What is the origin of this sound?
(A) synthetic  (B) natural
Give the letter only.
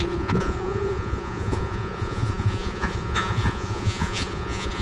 A